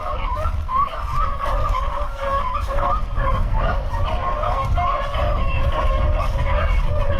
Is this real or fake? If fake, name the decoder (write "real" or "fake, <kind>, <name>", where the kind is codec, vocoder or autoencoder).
fake, codec, SNAC